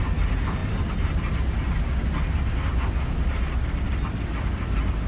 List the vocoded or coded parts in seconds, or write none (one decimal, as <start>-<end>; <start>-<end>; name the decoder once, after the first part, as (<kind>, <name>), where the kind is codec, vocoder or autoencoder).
none